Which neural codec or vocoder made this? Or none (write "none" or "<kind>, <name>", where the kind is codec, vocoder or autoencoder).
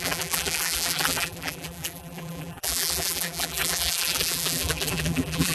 vocoder, BigVGAN v2